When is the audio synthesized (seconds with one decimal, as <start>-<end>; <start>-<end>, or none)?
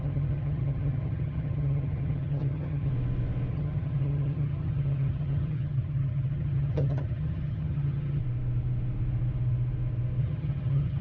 0.0-2.9; 3.5-8.2; 10.2-11.0